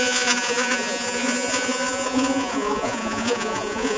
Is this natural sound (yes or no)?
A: no